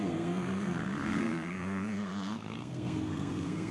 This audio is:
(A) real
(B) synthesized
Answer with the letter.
B